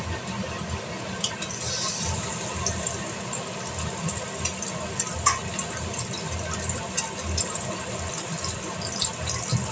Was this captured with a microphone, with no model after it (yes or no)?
yes